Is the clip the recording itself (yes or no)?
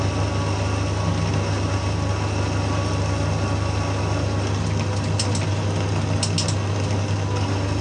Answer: yes